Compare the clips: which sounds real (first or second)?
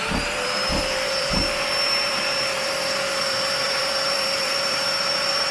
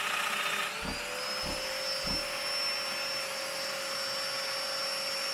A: second